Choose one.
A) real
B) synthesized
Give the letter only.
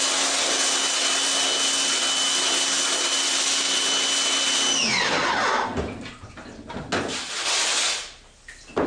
A